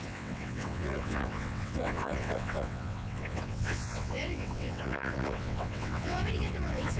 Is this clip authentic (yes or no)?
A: no